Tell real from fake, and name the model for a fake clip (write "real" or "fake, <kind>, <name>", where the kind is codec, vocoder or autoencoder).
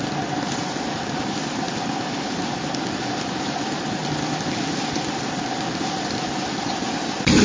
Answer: real